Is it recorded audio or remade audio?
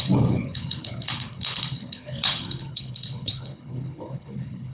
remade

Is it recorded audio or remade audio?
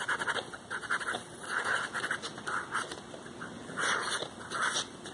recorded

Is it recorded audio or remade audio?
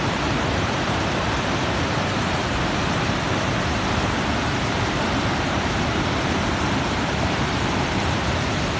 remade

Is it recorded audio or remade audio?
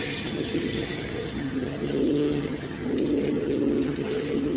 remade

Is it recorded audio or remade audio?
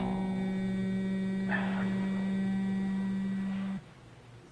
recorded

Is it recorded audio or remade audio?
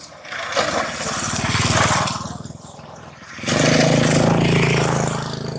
recorded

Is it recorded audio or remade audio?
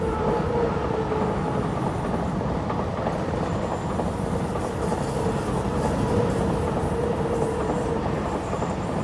recorded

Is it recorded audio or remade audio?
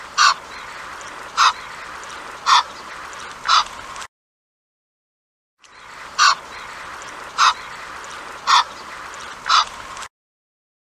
recorded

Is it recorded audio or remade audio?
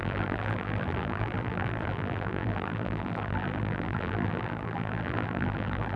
remade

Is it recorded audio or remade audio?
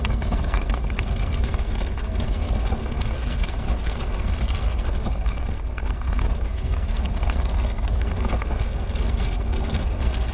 remade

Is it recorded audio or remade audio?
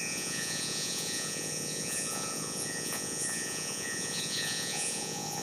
remade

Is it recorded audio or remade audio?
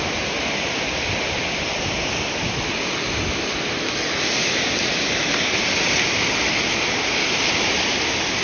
recorded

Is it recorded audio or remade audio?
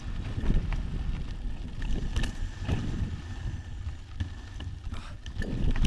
recorded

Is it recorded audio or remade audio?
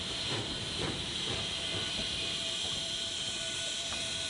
remade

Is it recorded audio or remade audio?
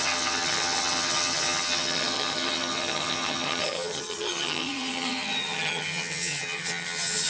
remade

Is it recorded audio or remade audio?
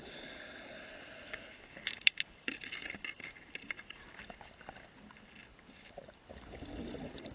recorded